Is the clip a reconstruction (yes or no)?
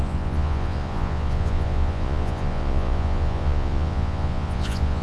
yes